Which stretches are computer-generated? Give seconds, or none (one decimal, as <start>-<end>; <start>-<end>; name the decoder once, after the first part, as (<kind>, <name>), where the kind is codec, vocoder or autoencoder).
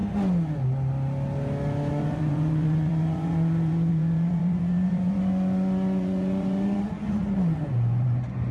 1.9-8.5 (vocoder, Vocos)